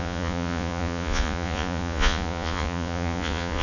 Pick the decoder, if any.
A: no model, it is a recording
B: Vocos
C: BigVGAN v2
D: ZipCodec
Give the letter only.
B